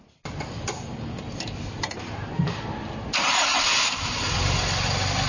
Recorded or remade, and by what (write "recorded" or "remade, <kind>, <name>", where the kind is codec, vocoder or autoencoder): recorded